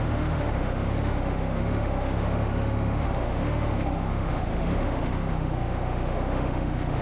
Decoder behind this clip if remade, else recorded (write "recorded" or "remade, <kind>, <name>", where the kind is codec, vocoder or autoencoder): remade, autoencoder, DAC-VAE